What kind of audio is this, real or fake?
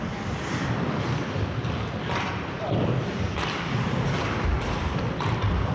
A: real